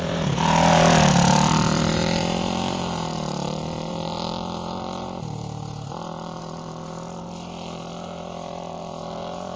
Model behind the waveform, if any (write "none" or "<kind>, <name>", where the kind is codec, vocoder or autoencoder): vocoder, BigVGAN v2